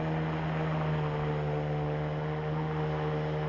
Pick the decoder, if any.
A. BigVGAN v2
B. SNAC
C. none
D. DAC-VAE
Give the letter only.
C